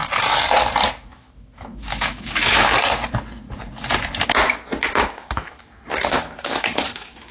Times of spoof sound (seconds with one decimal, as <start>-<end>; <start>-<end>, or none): 1.0-2.7; 4.9-7.3